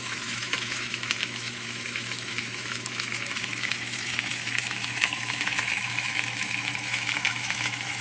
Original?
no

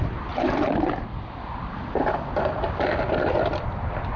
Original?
yes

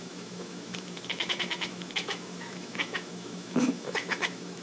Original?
no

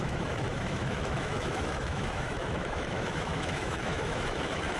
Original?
no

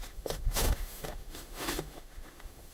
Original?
no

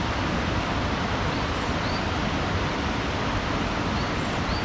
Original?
yes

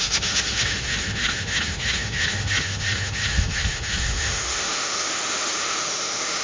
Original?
no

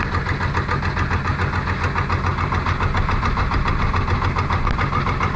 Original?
yes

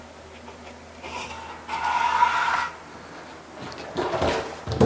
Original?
yes